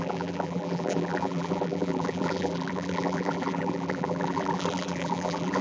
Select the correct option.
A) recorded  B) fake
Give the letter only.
B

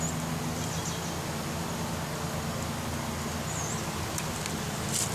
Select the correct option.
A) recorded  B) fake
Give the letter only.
A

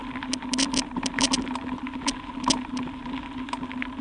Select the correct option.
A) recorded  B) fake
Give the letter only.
A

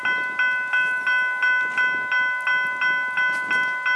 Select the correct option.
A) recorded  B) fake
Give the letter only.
A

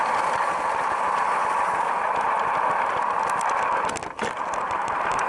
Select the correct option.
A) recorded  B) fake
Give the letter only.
A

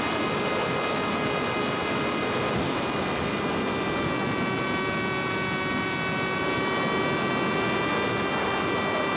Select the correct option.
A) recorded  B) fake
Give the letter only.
A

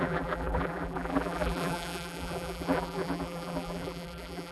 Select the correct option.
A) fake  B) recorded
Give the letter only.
A